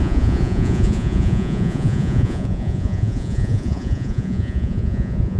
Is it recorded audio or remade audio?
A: remade